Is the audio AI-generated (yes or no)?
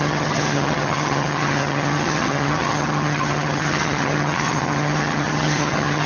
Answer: yes